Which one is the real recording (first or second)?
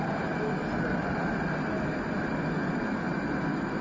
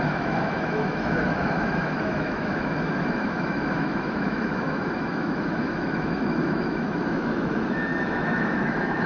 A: first